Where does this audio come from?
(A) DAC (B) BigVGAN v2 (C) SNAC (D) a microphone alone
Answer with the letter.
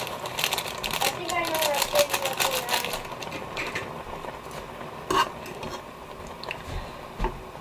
D